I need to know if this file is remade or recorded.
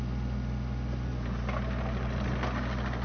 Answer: recorded